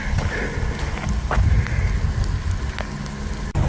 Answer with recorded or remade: recorded